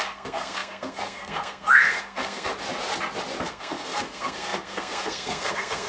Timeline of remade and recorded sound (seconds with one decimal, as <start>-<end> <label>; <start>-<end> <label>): 0.0-2.5 remade; 2.5-3.4 recorded; 3.4-5.9 remade